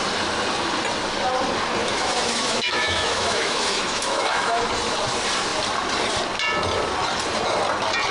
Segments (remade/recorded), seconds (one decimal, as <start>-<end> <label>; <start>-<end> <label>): 0.0-1.8 recorded; 1.8-4.7 remade; 4.7-8.1 recorded